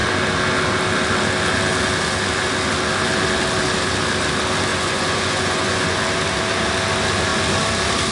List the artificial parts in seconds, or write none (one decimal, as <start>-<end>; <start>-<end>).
4.7-6.0